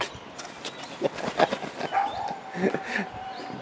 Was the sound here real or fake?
real